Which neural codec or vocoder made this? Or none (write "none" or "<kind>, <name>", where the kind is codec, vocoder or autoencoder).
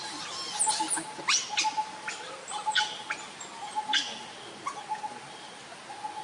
none